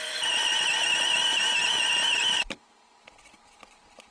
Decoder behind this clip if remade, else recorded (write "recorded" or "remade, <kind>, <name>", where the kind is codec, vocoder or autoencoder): remade, vocoder, BigVGAN v2